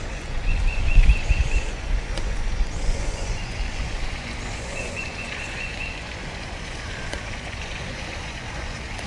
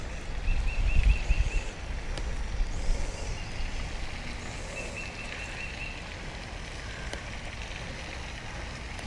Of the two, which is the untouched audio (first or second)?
second